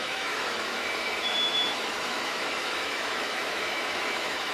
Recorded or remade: remade